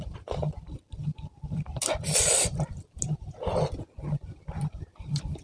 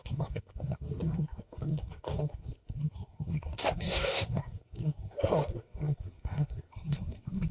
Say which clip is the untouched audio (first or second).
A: first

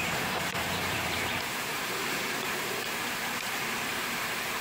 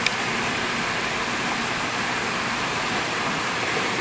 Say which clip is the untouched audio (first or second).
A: second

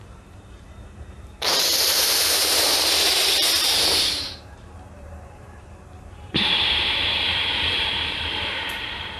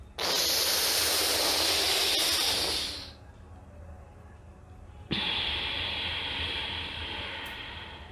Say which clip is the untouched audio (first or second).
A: second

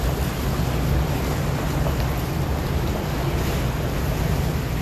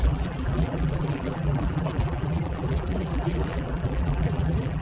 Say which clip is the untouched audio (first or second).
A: first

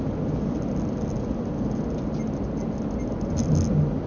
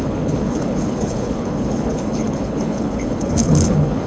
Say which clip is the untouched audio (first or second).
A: first